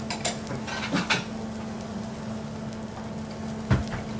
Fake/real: real